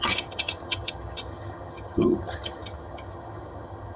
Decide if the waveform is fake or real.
fake